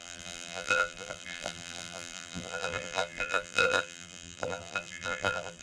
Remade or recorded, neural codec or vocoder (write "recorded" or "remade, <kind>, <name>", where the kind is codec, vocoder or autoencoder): remade, vocoder, BigVGAN v2